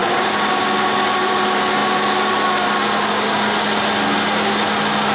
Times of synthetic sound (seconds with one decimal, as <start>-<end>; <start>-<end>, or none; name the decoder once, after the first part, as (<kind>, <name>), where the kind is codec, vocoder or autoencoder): none